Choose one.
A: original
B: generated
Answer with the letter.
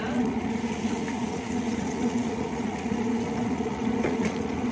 B